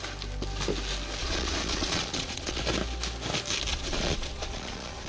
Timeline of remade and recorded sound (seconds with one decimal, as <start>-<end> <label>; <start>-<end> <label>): 0.0-1.2 recorded; 1.2-2.6 remade; 2.6-3.7 recorded; 3.7-5.1 remade